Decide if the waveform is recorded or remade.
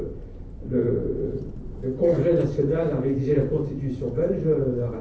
remade